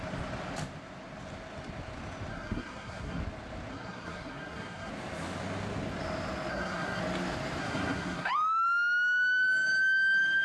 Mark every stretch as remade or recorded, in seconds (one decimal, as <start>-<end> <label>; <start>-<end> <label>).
0.0-2.3 recorded; 2.3-3.2 remade; 3.2-3.7 recorded; 3.7-4.9 remade; 4.9-6.5 recorded; 6.5-7.0 remade; 7.0-7.6 recorded; 7.6-8.3 remade; 8.3-10.4 recorded